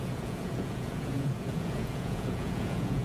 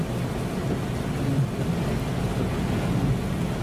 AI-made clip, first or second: first